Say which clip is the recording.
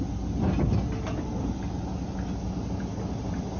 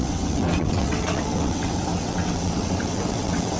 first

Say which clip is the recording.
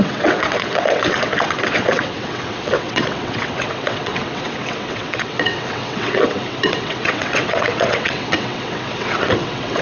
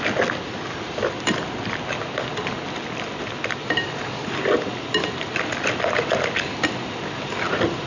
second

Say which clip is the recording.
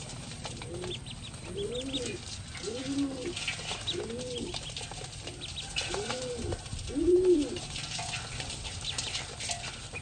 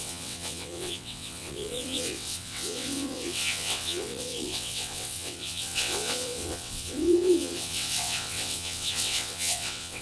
first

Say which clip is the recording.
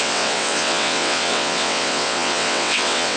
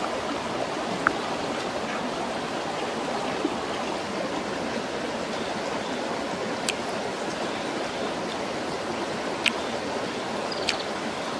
second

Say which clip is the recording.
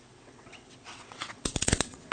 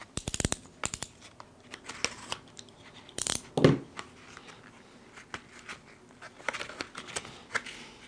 second